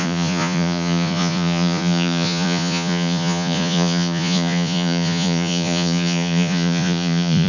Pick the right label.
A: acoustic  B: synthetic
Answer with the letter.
B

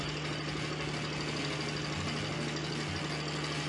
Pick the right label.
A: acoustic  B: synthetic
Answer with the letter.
A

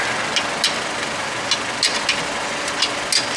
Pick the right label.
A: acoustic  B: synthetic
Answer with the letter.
A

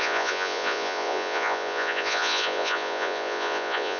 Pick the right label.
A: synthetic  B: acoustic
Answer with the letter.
A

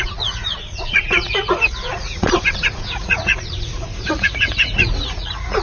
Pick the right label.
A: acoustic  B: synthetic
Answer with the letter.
B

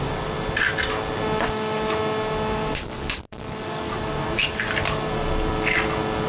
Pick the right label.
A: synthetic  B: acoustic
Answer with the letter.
B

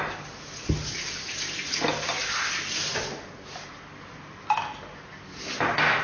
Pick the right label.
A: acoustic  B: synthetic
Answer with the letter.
A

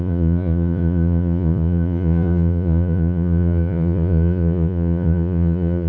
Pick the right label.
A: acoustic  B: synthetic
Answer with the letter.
B